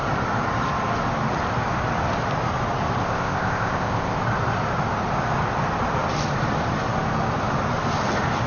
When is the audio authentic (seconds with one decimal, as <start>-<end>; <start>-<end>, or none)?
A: 0.0-3.0; 4.2-8.5